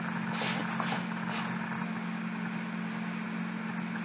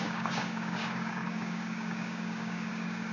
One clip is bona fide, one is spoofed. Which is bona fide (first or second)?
first